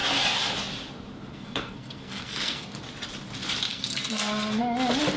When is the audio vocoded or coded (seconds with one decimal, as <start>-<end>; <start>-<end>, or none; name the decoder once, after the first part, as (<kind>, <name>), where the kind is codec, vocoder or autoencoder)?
1.3-2.8 (codec, SNAC); 3.7-4.6